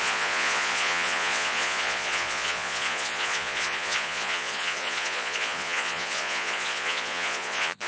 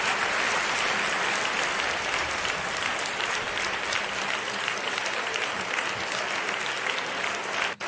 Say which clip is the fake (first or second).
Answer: first